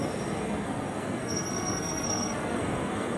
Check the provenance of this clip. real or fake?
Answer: fake